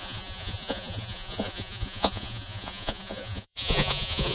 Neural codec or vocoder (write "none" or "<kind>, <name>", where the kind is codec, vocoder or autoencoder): vocoder, Vocos